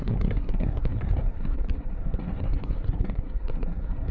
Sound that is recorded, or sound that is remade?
remade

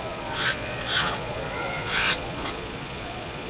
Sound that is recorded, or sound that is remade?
remade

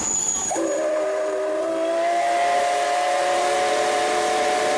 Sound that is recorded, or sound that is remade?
remade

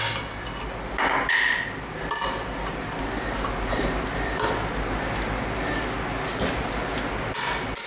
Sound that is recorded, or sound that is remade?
recorded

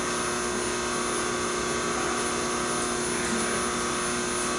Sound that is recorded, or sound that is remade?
recorded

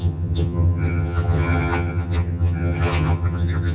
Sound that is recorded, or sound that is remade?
remade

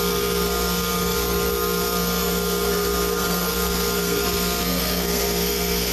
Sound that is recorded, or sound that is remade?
remade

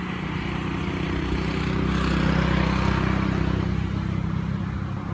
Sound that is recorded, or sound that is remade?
recorded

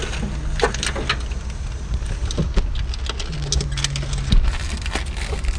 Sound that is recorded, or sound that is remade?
recorded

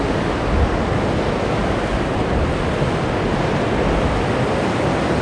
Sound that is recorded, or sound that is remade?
recorded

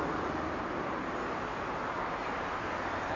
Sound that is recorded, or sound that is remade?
recorded